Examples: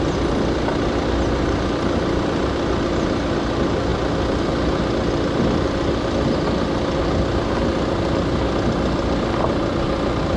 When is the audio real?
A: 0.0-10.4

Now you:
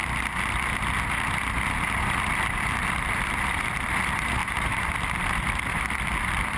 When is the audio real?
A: 0.0-4.4; 4.9-6.6

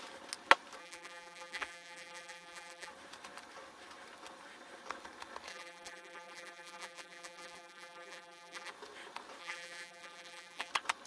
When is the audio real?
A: 0.0-0.8; 2.9-5.5; 8.7-9.4; 10.7-11.1